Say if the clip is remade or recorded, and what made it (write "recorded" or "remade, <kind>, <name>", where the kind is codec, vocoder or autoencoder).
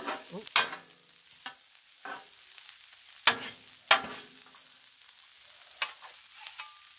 recorded